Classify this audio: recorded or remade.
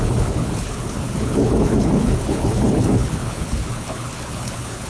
remade